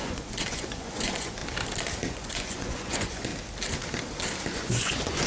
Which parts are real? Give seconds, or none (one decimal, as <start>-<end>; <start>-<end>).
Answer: 1.4-2.1; 3.3-4.5

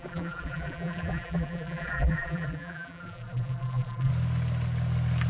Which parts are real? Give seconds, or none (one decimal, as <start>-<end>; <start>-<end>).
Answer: 4.1-5.3

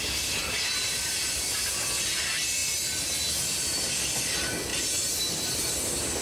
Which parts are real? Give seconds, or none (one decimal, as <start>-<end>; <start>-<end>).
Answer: 0.0-6.2

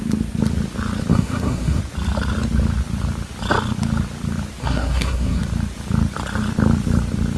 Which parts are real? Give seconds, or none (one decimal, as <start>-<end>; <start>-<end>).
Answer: 0.0-1.1; 1.8-4.6; 5.4-7.4

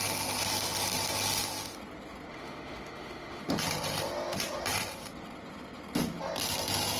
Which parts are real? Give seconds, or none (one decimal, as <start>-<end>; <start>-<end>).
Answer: 0.0-2.3; 3.5-7.0

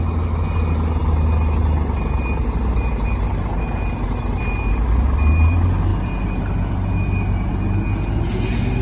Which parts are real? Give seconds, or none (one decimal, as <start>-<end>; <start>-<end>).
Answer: 0.0-5.9; 7.5-8.8

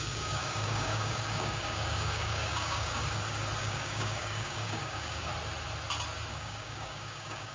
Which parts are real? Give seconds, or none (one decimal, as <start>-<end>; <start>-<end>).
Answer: 3.0-3.6; 5.3-6.3